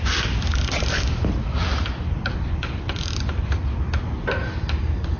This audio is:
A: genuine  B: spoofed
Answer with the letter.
A